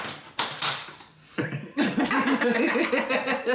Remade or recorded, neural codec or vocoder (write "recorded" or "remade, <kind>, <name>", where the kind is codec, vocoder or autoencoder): remade, vocoder, BigVGAN v2